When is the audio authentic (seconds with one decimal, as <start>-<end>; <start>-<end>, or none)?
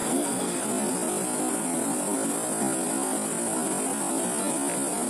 0.6-5.1